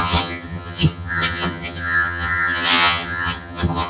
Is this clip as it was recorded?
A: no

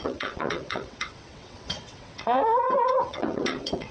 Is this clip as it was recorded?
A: no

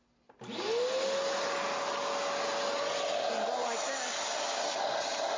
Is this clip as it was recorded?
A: yes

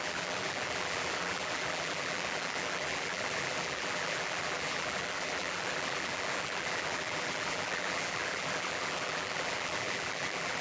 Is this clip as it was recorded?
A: no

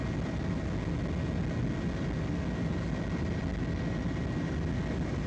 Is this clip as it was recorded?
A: yes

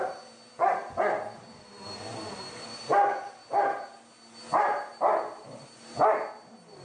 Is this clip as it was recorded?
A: yes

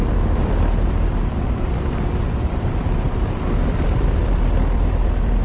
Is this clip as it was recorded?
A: no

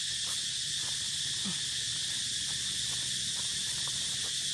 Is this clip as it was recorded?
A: yes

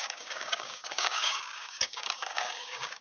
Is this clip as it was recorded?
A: no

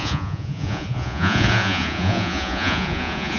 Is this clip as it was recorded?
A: no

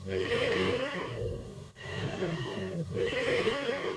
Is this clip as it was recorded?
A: no